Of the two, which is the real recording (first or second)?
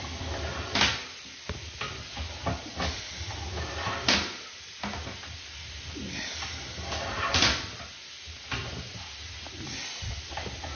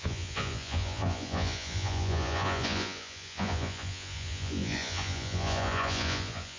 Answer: first